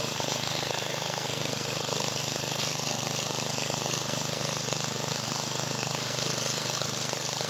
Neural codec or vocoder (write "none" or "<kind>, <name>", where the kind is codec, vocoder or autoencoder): codec, SNAC